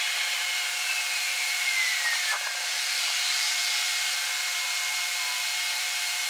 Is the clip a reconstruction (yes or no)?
yes